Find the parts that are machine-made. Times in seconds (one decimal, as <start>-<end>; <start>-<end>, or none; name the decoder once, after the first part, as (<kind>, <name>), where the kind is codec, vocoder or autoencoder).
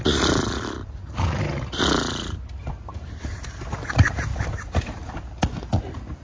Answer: 2.9-3.5 (vocoder, BigVGAN v2); 4.3-5.2